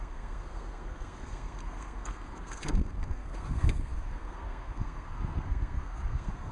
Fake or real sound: fake